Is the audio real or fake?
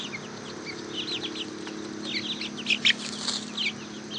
real